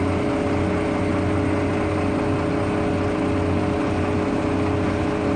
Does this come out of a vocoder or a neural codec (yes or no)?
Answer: no